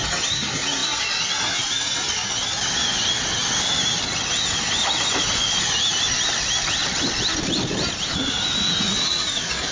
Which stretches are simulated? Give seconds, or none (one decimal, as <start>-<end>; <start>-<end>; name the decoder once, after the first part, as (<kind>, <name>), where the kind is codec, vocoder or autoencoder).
none